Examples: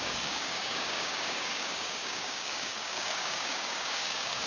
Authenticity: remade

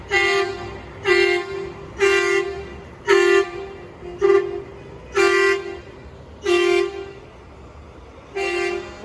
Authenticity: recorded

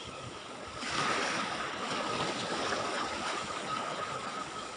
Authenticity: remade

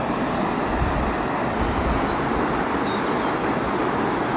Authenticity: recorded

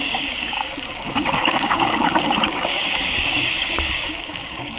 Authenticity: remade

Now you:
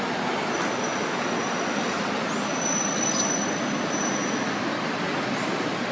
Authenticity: recorded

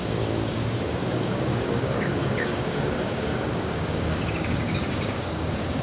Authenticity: remade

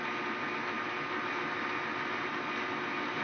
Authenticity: recorded